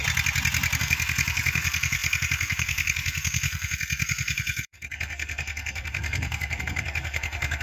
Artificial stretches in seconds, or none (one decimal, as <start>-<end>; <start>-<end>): 0.8-7.6